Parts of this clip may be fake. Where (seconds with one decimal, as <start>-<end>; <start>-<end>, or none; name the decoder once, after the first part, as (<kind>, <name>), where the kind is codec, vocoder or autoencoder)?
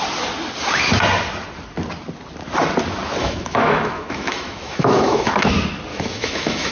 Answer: 3.2-5.5 (autoencoder, DAC-VAE); 5.9-6.7